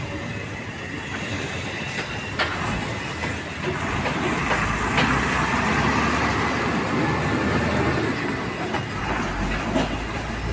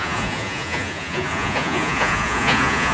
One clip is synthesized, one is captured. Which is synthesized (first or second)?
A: second